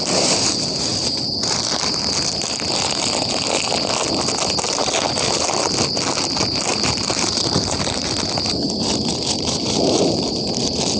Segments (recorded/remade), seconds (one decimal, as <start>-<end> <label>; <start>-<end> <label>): 0.0-6.7 recorded; 6.7-8.1 remade; 8.1-9.1 recorded; 9.1-10.3 remade; 10.3-11.0 recorded